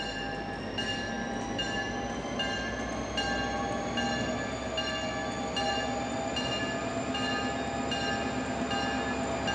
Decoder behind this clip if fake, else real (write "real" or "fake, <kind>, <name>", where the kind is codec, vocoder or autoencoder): real